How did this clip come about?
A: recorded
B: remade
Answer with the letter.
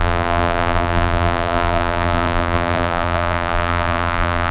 B